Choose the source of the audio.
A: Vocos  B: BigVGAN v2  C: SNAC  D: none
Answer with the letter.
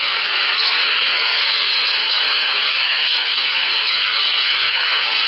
C